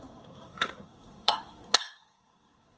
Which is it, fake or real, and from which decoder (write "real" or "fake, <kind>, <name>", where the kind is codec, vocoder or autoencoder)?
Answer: fake, codec, SNAC